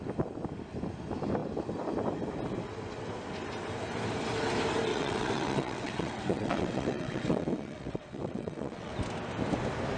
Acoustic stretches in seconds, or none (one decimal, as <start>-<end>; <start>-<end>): 0.0-4.9; 8.9-10.0